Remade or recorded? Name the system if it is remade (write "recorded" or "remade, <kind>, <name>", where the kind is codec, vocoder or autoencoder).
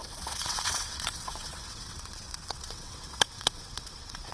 remade, vocoder, WaveNeXt